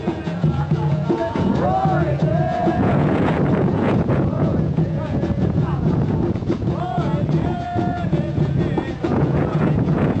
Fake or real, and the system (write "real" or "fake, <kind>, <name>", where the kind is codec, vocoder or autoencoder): fake, vocoder, Vocos